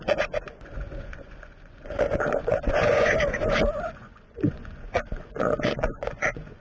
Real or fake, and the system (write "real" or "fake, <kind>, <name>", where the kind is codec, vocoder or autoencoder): fake, vocoder, Vocos